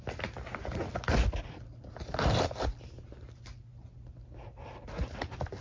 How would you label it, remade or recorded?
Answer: recorded